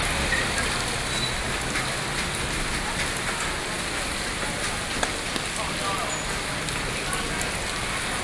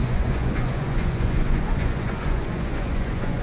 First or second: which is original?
first